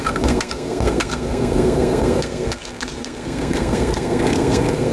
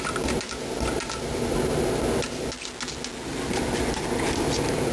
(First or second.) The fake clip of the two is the first